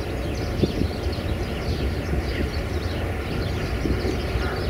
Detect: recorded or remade recorded